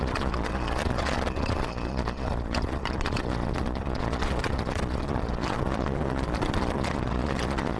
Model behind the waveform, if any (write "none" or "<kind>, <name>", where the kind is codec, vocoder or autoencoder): vocoder, Vocos